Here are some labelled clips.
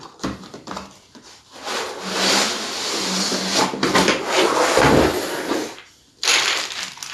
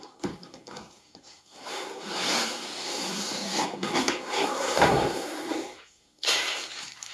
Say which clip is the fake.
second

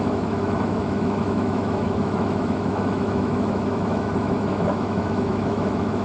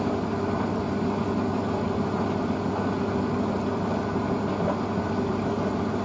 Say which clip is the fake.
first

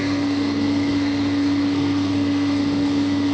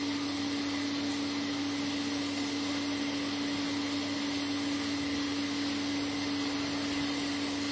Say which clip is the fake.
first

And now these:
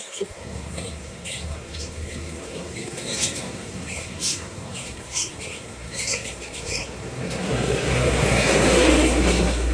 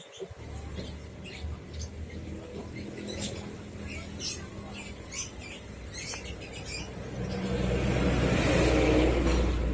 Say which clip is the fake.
first